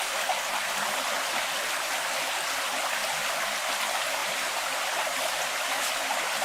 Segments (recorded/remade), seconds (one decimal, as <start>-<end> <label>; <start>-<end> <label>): 0.0-6.4 recorded